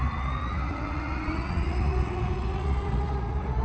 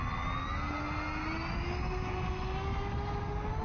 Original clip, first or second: second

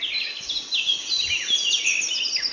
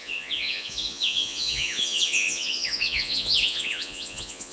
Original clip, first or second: first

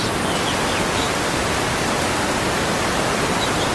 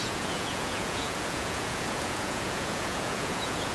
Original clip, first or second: first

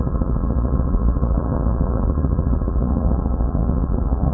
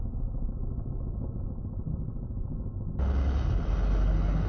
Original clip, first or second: second